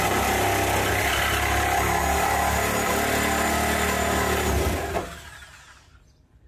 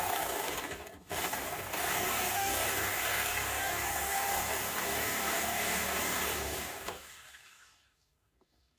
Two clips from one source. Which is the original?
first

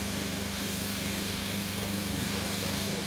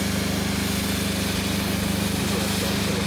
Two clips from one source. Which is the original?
second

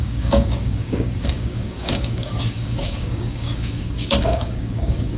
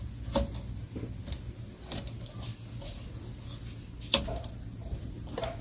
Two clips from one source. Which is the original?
second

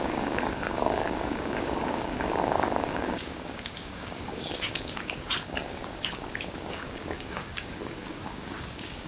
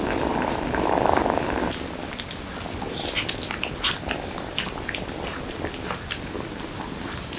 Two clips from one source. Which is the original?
second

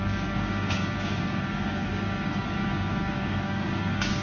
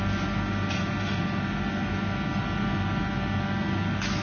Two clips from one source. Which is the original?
second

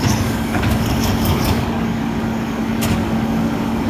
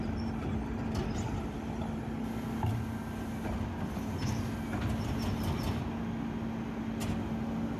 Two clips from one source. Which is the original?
second